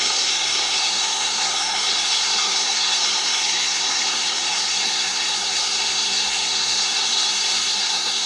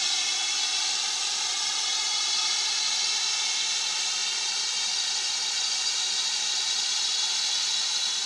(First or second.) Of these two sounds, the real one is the second